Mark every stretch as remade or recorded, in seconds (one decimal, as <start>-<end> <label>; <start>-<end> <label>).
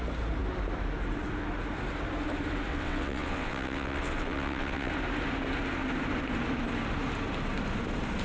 0.0-2.7 recorded; 2.7-4.9 remade; 4.9-8.2 recorded